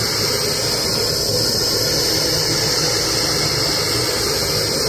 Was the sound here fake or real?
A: real